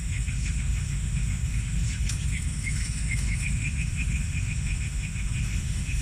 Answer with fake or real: fake